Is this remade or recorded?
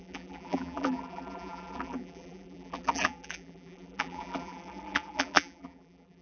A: remade